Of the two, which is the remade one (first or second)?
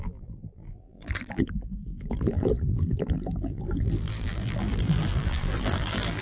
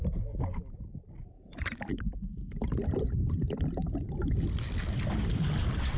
first